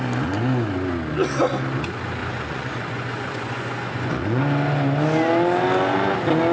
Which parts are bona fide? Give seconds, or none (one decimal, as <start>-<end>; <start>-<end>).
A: 0.0-2.2; 4.4-6.5